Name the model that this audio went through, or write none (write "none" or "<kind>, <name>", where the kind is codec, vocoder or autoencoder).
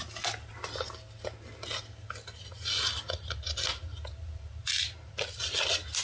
none